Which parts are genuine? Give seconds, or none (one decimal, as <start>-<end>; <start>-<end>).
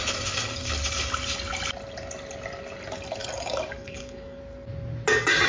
0.0-3.2; 4.4-5.5